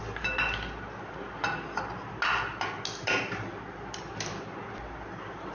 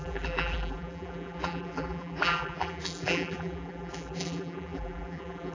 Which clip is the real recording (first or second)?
first